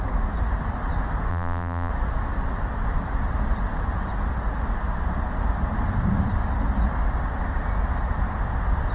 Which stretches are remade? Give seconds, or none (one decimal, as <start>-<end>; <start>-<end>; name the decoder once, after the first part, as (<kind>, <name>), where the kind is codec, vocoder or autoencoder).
1.3-1.9 (vocoder, BigVGAN v2)